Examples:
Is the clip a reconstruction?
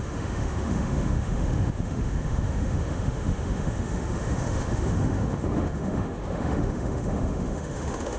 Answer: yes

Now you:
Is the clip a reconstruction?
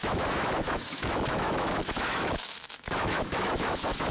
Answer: yes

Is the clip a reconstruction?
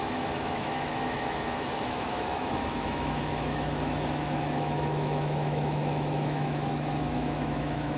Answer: yes